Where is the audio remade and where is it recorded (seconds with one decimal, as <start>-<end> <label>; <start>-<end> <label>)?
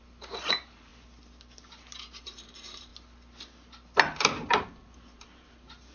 0.0-0.9 remade; 0.9-2.2 recorded; 2.2-2.9 remade; 2.9-4.5 recorded; 4.5-5.9 remade